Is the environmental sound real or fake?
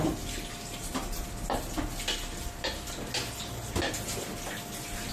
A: real